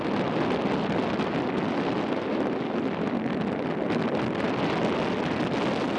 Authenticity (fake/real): real